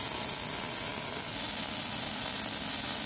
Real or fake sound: real